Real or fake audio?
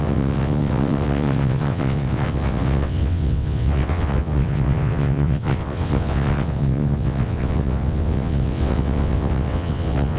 fake